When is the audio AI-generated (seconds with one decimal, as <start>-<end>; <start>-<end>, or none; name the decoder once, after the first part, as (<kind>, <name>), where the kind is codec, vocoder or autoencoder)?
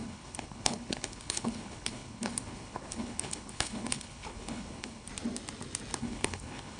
0.0-5.1 (codec, HILCodec); 6.0-6.8